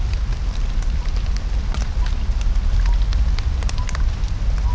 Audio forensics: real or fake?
real